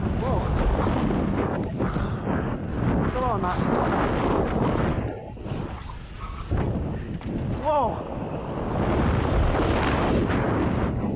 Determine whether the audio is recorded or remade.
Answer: recorded